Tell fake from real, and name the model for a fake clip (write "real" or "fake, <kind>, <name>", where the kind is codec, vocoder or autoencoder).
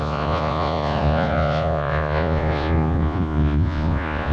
fake, vocoder, Vocos